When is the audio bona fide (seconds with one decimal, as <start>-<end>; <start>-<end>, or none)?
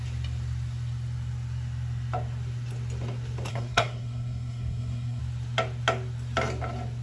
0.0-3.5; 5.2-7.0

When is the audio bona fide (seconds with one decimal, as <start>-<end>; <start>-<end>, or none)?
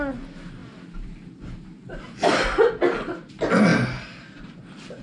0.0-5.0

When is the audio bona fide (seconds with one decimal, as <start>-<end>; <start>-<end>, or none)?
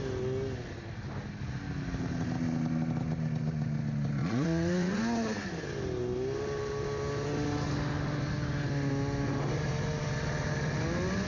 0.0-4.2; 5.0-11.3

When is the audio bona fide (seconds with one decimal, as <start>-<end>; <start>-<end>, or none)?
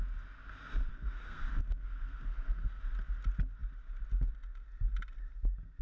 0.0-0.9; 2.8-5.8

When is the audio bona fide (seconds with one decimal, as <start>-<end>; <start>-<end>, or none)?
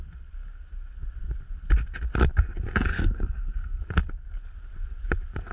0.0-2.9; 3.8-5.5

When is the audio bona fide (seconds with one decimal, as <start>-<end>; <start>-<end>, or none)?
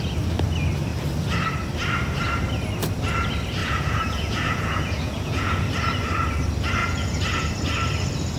0.0-3.6; 5.7-6.8; 7.5-8.4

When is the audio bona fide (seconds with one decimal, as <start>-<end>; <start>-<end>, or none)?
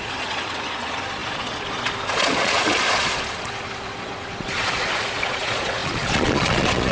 none